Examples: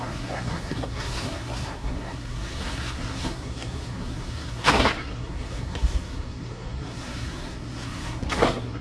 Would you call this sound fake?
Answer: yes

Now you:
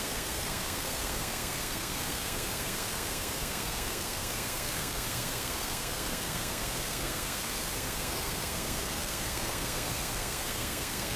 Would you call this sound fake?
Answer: yes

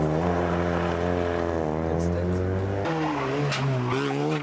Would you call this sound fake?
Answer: no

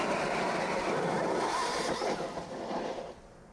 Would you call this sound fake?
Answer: no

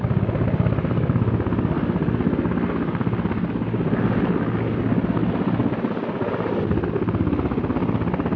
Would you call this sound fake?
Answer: no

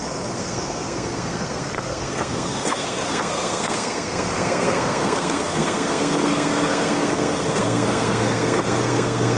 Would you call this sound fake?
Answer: yes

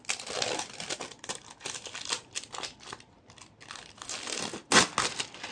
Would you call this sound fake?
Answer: no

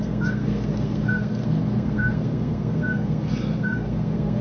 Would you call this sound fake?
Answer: yes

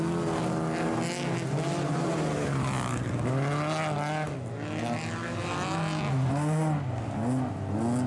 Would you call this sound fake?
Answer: no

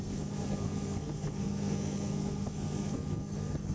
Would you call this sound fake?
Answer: yes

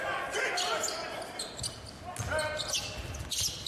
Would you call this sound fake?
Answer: no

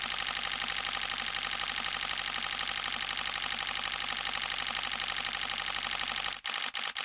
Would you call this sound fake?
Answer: no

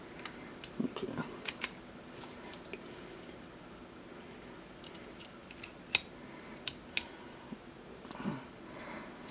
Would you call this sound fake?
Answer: no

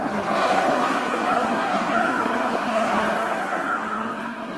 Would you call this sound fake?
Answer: yes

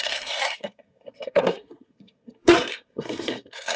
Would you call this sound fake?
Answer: yes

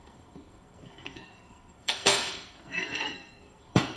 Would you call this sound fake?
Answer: yes